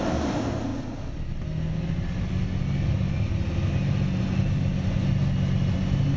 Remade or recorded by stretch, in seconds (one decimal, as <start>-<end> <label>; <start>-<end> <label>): 0.0-6.2 recorded